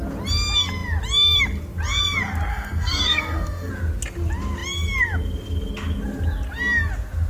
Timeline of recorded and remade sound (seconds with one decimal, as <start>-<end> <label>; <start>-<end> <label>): 0.0-2.5 recorded; 2.5-3.7 remade; 3.7-7.3 recorded